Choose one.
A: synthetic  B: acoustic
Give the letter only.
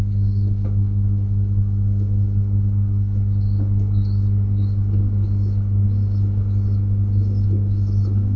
A